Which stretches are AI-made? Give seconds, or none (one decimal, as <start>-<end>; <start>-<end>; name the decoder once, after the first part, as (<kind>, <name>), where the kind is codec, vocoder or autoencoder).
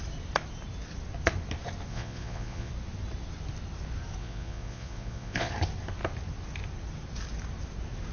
1.9-2.7 (vocoder, Vocos); 4.2-5.5